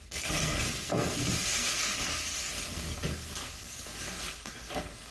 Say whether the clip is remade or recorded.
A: remade